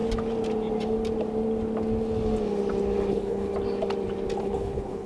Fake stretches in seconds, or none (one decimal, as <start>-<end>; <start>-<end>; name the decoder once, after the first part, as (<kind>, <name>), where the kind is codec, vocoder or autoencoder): 3.1-3.5 (codec, HILCodec); 4.4-5.1